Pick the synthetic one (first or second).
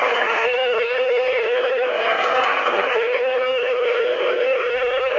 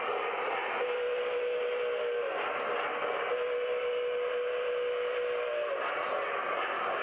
first